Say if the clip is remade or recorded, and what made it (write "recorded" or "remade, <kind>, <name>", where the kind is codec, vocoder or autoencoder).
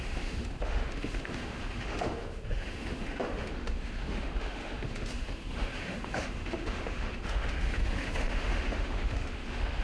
remade, autoencoder, DAC-VAE